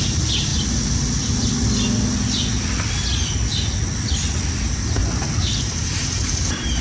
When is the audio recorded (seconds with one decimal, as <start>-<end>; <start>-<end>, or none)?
0.5-4.6; 5.0-5.6